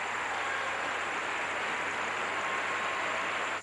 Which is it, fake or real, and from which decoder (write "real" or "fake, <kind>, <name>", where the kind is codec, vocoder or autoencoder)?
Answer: real